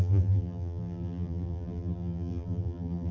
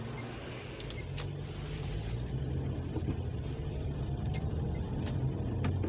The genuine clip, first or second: second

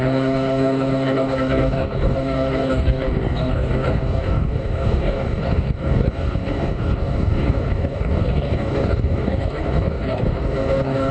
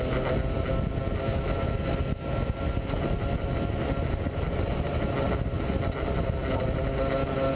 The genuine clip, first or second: second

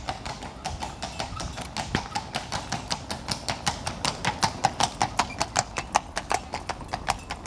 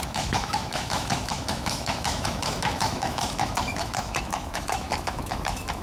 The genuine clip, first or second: first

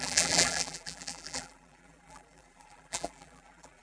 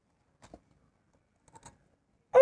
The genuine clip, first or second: second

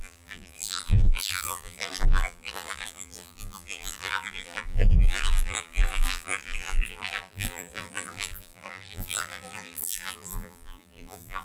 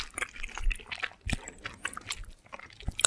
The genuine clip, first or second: second